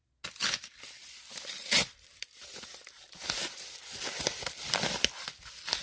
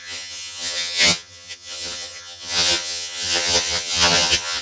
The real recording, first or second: first